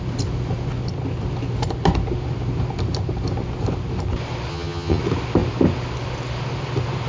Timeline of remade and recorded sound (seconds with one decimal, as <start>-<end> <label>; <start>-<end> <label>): 0.0-4.5 recorded; 4.5-5.0 remade; 5.0-7.1 recorded